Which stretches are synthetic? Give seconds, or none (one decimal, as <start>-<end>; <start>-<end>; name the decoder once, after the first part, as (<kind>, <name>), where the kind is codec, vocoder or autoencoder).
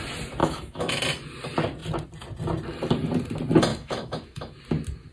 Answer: 0.4-1.0 (autoencoder, DAC-VAE); 3.7-4.6